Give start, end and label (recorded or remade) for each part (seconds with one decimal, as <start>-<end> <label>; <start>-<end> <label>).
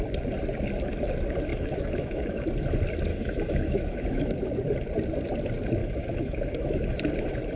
0.0-1.5 recorded; 1.5-2.5 remade; 2.5-3.1 recorded; 3.1-4.4 remade; 4.4-5.8 recorded; 5.8-7.6 remade